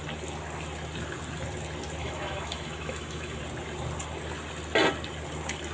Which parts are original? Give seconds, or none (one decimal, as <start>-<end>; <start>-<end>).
0.0-2.0; 3.4-5.7